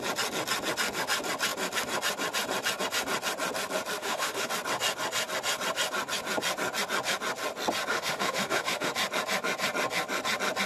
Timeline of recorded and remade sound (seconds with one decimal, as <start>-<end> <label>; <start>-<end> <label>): 0.0-4.0 recorded; 4.0-4.5 remade; 4.5-7.9 recorded; 7.9-8.9 remade; 8.9-10.7 recorded